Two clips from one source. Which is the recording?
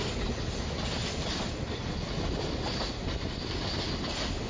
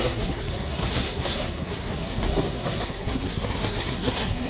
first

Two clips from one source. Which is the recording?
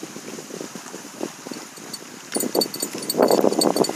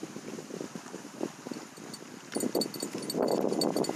second